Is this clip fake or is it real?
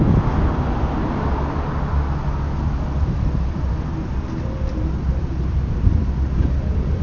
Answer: real